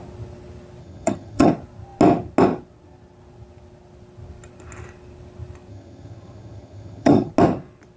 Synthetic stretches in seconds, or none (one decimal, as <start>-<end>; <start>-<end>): 0.8-1.5; 5.7-7.3